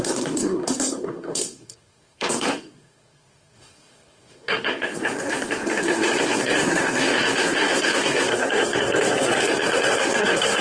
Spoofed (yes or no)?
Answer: yes